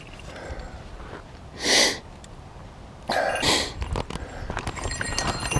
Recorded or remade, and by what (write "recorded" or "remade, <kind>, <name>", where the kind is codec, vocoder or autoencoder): recorded